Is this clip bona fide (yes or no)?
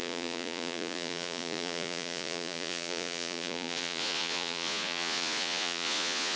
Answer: no